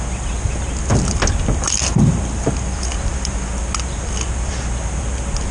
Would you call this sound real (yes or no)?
yes